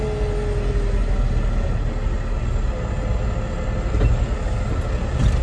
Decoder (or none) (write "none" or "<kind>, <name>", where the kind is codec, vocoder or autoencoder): none